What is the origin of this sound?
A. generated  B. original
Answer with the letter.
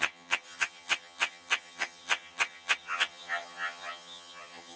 A